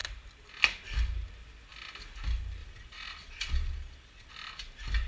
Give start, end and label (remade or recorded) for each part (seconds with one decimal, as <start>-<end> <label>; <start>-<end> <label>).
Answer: 0.0-2.6 recorded; 2.6-4.3 remade; 4.3-5.1 recorded